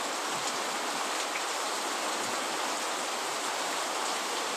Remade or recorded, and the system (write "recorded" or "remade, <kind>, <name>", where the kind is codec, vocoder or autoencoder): recorded